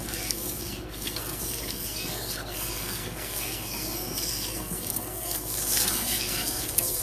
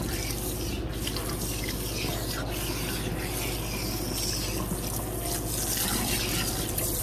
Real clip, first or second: second